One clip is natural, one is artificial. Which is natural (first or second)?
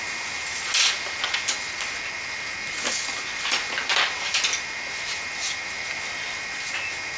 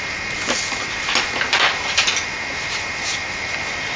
first